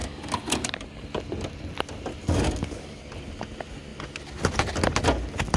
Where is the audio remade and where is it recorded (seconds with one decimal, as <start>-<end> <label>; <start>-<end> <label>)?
0.0-0.7 remade; 0.7-2.2 recorded; 2.2-3.0 remade; 3.0-5.6 recorded

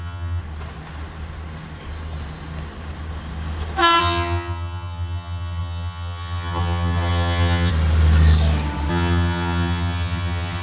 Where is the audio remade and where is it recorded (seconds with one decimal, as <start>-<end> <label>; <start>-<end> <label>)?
0.0-0.4 remade; 0.4-4.0 recorded; 4.0-7.7 remade; 7.7-8.9 recorded; 8.9-10.6 remade

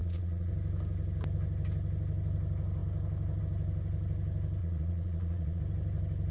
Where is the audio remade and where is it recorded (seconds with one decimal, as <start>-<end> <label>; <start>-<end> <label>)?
0.0-0.5 remade; 0.5-4.6 recorded; 4.6-5.6 remade; 5.6-6.3 recorded

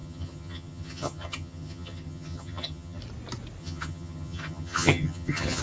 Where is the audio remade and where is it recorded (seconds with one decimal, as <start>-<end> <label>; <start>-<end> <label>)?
0.0-3.0 remade; 3.0-3.6 recorded; 3.6-5.6 remade

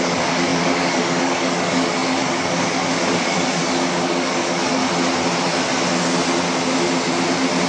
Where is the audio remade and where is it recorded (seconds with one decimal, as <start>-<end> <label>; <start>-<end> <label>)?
0.0-4.8 remade; 4.8-7.7 recorded

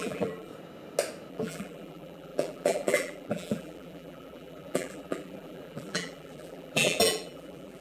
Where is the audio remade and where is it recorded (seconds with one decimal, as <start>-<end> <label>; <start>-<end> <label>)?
0.0-0.5 remade; 0.5-1.3 recorded; 1.3-7.8 remade

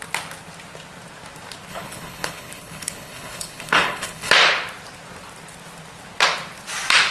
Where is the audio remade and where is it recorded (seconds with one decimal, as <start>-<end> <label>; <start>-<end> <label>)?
0.0-1.7 recorded; 1.7-4.3 remade; 4.3-7.1 recorded

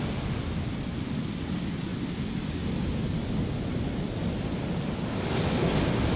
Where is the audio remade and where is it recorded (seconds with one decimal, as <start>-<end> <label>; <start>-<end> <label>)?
0.0-6.2 recorded